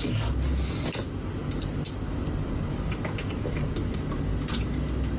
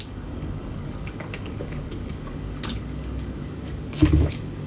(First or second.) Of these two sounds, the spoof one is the second